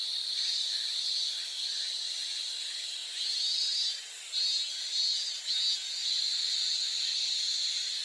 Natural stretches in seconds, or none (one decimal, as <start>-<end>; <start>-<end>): 0.0-7.1